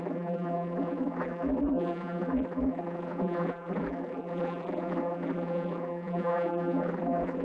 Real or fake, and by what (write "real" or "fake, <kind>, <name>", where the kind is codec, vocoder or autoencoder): fake, vocoder, BigVGAN v2